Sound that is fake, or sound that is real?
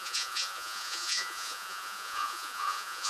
fake